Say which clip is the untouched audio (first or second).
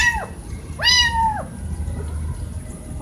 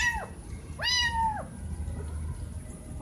second